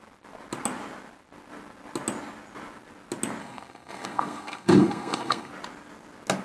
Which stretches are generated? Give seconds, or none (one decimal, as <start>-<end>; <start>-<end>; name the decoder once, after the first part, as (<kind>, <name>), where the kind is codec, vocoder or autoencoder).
3.4-5.5 (codec, SNAC)